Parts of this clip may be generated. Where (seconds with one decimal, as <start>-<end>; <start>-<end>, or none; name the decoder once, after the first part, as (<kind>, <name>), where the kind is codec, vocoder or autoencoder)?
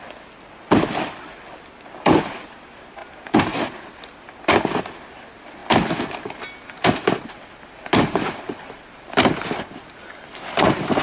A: none